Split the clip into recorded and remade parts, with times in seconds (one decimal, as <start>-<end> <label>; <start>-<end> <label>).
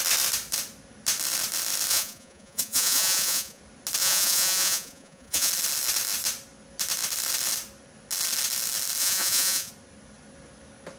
0.0-1.9 recorded; 1.9-3.6 remade; 3.6-4.0 recorded; 4.0-5.5 remade; 5.5-9.0 recorded; 9.0-9.7 remade; 9.7-11.0 recorded